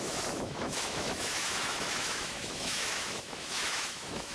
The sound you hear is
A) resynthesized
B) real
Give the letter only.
A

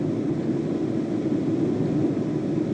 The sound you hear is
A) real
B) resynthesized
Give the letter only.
A